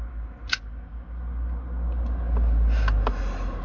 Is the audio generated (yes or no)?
no